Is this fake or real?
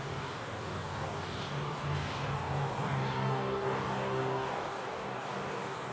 fake